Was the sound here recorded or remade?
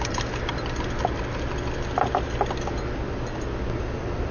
recorded